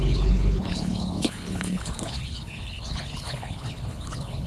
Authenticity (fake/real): fake